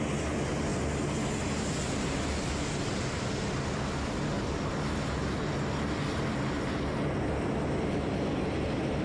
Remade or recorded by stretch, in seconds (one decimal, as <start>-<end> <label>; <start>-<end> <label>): 0.0-9.0 recorded